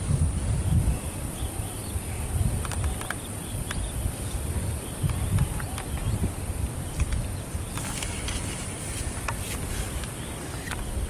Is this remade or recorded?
recorded